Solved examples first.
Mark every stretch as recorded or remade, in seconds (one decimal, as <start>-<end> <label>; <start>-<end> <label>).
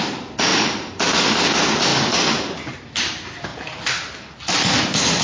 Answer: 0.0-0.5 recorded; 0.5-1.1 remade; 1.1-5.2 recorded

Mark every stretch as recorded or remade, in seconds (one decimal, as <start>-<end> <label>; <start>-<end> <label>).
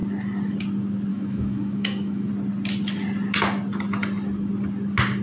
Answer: 0.0-1.1 recorded; 1.1-2.3 remade; 2.3-5.2 recorded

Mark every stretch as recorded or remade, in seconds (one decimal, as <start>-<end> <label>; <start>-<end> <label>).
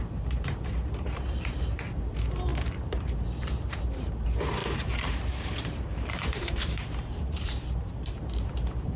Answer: 0.0-9.0 remade